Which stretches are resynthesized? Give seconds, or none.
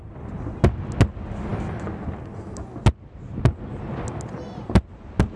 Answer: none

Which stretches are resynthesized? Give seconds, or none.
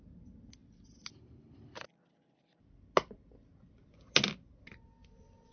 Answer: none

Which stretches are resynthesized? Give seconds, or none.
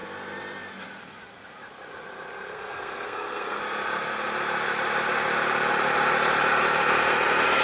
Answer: 2.5-3.6 (codec, SNAC)